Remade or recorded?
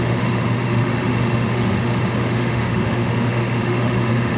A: remade